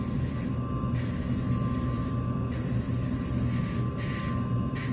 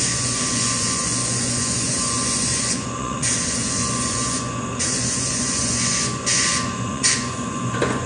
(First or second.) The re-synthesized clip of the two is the second